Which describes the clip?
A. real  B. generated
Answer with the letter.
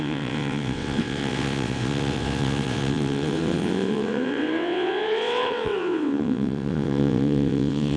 B